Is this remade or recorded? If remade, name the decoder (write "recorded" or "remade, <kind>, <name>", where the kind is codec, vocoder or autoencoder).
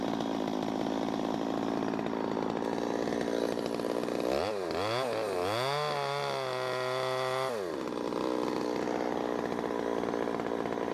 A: recorded